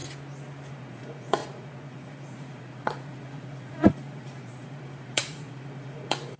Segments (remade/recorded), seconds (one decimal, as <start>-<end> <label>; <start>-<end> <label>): 0.0-0.7 recorded; 0.7-6.4 remade